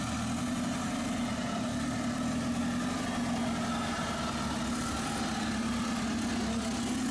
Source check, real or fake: real